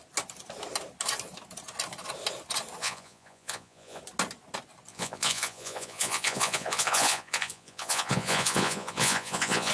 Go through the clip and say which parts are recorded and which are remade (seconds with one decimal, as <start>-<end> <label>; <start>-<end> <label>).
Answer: 0.0-2.8 recorded; 2.8-4.0 remade; 4.0-4.9 recorded; 4.9-9.7 remade